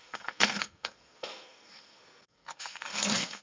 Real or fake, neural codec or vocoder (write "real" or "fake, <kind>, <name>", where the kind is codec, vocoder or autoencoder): fake, codec, SNAC